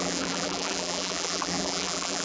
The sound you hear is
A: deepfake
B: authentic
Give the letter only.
A